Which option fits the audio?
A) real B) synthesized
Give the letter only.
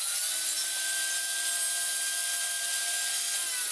A